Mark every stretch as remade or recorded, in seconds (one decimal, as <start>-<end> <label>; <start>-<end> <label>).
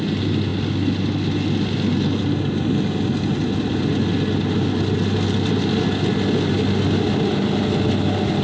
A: 0.0-8.4 recorded